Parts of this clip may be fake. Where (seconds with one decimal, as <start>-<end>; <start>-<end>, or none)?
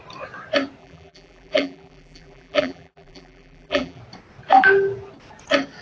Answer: 0.8-4.0